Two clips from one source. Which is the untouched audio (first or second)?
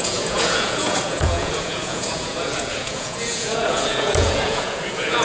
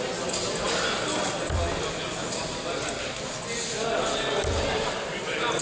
second